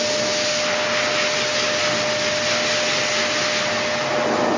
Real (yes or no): yes